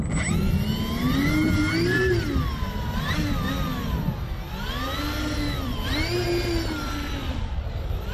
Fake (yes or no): no